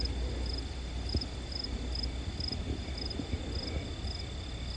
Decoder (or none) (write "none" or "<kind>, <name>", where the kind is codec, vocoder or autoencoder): none